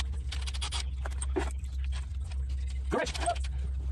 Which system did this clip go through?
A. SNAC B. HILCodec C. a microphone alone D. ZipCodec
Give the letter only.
C